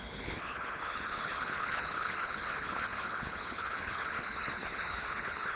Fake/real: fake